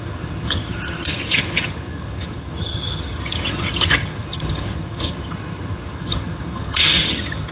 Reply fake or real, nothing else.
fake